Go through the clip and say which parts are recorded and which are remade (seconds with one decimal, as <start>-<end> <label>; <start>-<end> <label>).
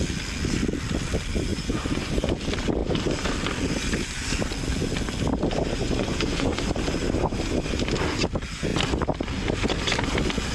0.0-1.5 recorded; 1.5-2.3 remade; 2.3-5.8 recorded; 5.8-6.6 remade; 6.6-10.5 recorded